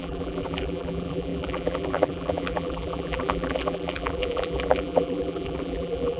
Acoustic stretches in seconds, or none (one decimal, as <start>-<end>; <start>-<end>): none